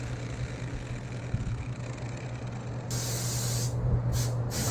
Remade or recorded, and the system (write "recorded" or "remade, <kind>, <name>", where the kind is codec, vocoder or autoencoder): recorded